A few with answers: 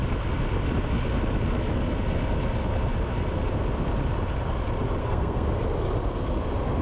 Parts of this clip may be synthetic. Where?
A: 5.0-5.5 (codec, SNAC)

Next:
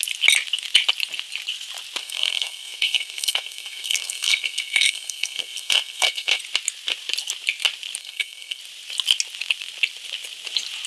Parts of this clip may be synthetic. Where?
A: 2.0-6.4 (codec, SNAC); 8.0-8.6

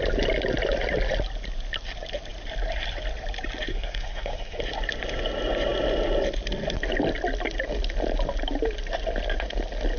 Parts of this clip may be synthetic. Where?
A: 3.7-4.6 (codec, SNAC)

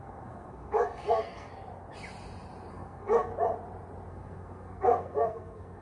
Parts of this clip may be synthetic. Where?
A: 0.0-1.5 (codec, SNAC); 2.7-3.3; 4.1-5.8

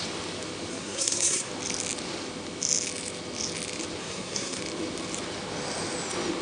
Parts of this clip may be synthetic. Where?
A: 0.7-1.5 (codec, SNAC); 4.0-4.6

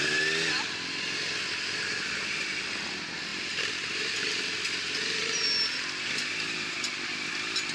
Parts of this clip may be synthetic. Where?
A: none

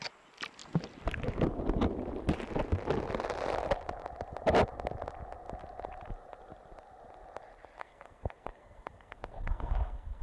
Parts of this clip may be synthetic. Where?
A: 7.8-10.2 (codec, SNAC)